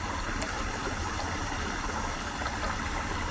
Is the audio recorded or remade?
recorded